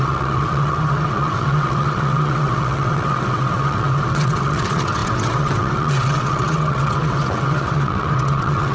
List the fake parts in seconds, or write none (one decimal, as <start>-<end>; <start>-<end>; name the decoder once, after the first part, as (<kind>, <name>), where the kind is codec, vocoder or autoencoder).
0.0-8.7 (vocoder, WaveNeXt)